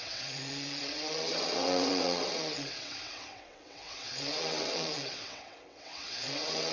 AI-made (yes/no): yes